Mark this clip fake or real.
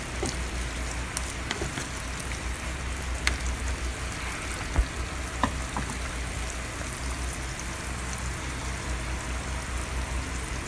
real